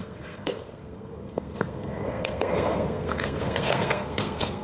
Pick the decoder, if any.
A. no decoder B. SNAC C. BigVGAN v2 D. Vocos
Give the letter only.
B